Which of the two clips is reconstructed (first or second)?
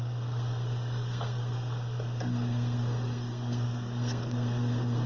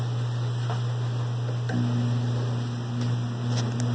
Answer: first